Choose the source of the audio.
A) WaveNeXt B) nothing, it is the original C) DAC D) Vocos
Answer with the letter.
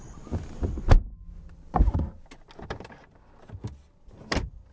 B